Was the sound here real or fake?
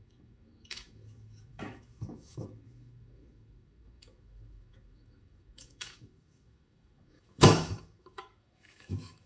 fake